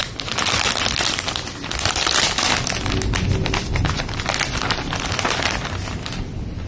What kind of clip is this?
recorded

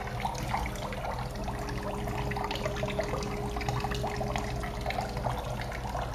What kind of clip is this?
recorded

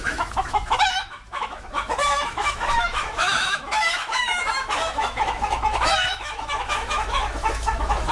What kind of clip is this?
remade